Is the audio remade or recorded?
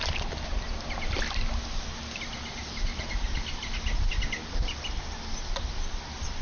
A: recorded